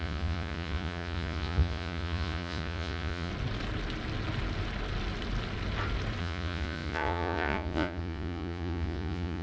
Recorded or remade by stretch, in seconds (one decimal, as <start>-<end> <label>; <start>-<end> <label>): 0.0-3.3 remade; 3.3-6.2 recorded; 6.2-9.4 remade